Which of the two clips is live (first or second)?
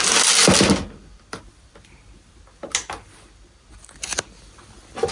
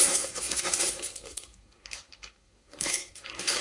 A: first